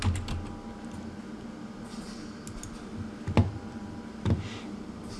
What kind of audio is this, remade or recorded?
recorded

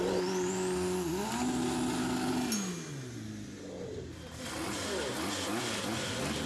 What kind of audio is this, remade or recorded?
recorded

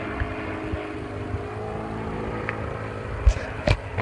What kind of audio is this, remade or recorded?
recorded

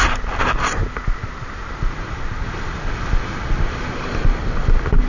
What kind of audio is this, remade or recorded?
recorded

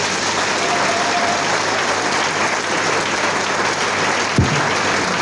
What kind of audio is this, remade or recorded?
recorded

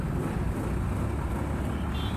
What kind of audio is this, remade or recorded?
recorded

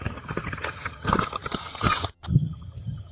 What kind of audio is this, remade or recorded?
remade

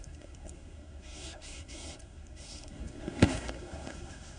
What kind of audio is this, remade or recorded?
remade